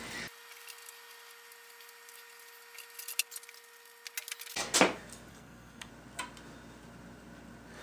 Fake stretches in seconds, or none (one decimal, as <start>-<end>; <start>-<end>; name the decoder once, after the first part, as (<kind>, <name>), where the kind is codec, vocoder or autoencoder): 5.3-5.9 (codec, SNAC)